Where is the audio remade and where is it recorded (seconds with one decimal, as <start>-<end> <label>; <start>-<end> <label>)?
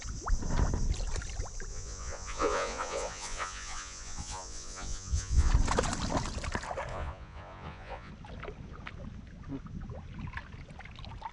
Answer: 0.0-1.7 recorded; 1.7-5.5 remade; 5.5-6.9 recorded; 6.9-8.1 remade; 8.1-11.3 recorded